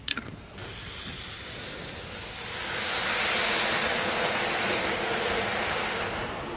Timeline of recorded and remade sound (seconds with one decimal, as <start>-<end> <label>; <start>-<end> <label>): 0.0-6.6 recorded